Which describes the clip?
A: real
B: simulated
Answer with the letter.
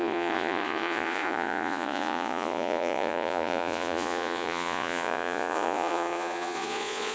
B